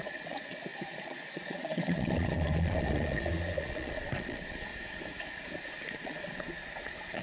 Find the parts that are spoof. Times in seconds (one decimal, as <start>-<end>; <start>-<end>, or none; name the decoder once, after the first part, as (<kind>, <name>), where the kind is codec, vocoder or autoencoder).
0.0-4.7 (vocoder, Vocos); 5.9-7.2